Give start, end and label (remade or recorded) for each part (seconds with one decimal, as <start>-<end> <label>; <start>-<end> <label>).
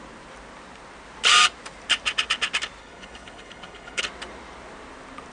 0.0-2.8 recorded; 2.8-4.0 remade; 4.0-5.3 recorded